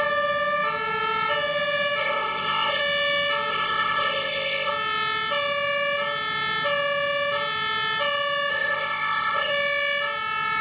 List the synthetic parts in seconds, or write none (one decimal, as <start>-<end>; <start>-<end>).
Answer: 2.0-2.8; 3.5-4.7; 8.5-9.5